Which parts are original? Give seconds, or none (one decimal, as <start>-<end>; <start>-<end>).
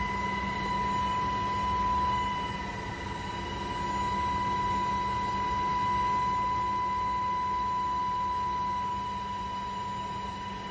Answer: 0.0-10.7